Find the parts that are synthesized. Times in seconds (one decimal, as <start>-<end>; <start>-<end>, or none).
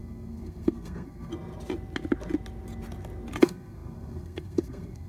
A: 0.0-1.3; 3.4-5.1